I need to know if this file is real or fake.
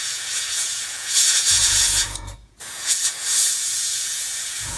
fake